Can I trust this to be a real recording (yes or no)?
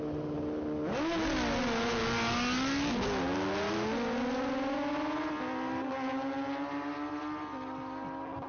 yes